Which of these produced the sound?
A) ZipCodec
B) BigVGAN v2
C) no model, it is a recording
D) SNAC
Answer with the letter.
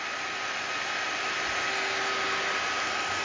C